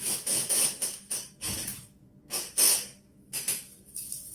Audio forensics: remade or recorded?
remade